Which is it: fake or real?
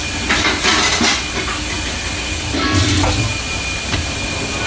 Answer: real